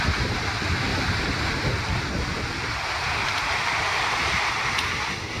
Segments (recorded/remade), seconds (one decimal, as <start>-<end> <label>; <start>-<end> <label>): 0.0-0.9 recorded; 0.9-1.5 remade; 1.5-3.2 recorded; 3.2-4.1 remade; 4.1-5.4 recorded